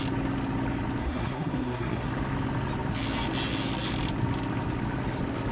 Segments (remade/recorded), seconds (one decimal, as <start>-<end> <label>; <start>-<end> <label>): 0.0-1.0 recorded; 1.0-2.1 remade; 2.1-5.5 recorded